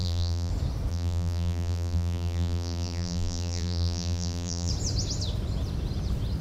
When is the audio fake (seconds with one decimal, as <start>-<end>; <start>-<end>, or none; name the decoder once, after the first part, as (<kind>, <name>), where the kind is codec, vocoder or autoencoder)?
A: 0.0-0.5 (vocoder, BigVGAN v2); 0.9-4.7